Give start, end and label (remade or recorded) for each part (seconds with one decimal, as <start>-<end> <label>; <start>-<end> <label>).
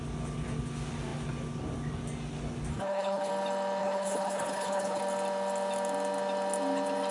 0.0-2.7 recorded; 2.7-3.3 remade; 3.3-3.8 recorded; 3.8-5.0 remade; 5.0-7.1 recorded